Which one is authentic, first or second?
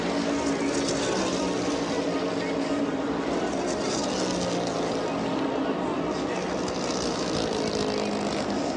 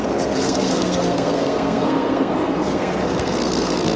first